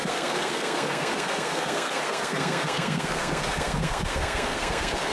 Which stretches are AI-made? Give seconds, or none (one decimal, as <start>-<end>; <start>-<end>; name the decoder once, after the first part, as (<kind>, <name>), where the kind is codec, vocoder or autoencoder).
0.0-5.1 (codec, SNAC)